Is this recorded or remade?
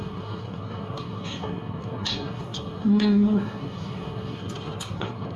remade